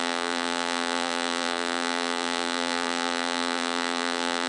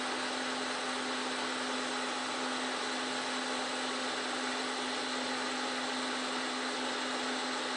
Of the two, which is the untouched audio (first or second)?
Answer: second